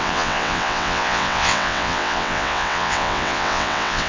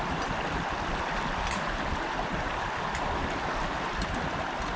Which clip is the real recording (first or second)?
second